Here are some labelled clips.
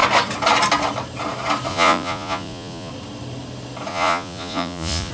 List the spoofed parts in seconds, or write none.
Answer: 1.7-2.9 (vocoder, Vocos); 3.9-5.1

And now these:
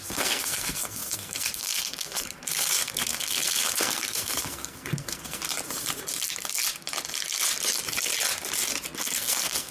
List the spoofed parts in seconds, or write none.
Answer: 0.0-5.4 (codec, SNAC); 9.0-9.7